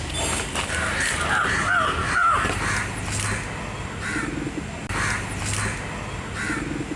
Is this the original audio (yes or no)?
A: yes